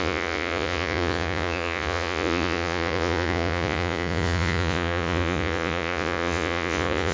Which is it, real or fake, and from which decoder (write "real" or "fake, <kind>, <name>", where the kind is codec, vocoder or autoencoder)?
fake, vocoder, Vocos